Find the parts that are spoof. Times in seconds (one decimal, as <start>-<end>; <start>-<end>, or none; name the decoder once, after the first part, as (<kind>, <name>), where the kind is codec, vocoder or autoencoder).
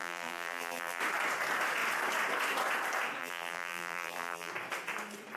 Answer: 0.0-1.0 (vocoder, BigVGAN v2); 3.2-4.5